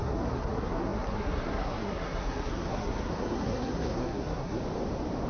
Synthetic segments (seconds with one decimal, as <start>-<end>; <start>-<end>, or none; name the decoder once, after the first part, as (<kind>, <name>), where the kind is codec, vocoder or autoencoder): 0.0-4.6 (codec, SNAC)